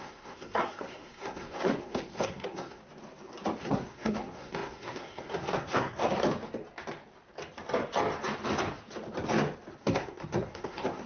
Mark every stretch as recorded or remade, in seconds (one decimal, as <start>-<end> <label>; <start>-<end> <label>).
0.0-2.8 remade; 2.8-3.6 recorded; 3.6-6.2 remade; 6.2-9.8 recorded; 9.8-11.1 remade